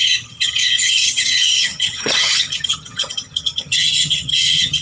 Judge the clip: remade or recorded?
remade